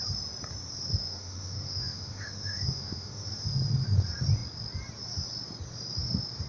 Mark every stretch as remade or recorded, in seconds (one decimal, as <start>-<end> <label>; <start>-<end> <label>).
0.0-1.0 recorded; 1.0-3.3 remade; 3.3-6.5 recorded